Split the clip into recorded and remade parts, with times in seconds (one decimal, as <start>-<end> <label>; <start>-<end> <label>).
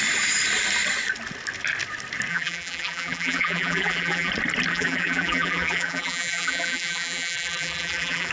0.0-2.3 recorded; 2.3-4.3 remade; 4.3-4.7 recorded; 4.7-8.3 remade